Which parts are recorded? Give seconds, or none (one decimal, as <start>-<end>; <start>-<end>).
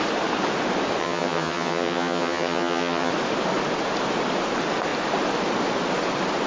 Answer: 0.0-1.0; 3.1-6.5